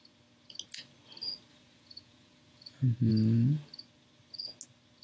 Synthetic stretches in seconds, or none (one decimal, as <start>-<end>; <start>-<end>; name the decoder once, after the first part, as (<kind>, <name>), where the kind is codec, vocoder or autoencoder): 1.5-3.1 (vocoder, Vocos)